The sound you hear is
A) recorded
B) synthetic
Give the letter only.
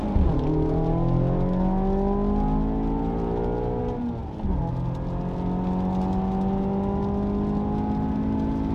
A